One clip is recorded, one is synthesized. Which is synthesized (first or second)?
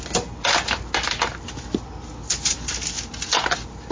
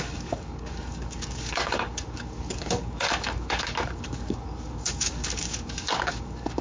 second